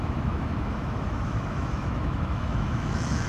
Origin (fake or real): fake